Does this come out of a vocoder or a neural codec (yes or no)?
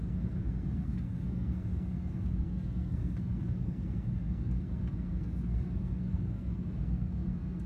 yes